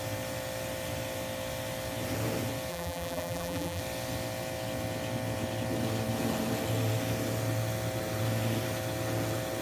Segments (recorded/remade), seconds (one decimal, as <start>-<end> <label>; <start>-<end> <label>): 0.0-2.7 recorded; 2.7-3.8 remade; 3.8-9.6 recorded